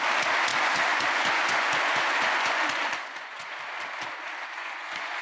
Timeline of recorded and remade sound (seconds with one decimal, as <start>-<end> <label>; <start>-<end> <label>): 0.0-0.5 recorded; 0.5-3.6 remade; 3.6-4.6 recorded; 4.6-5.2 remade